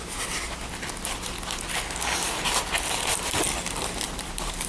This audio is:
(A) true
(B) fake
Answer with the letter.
A